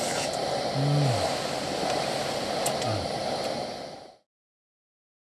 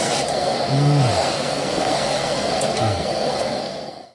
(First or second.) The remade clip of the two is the second